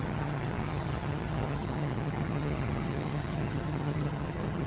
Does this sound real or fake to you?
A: fake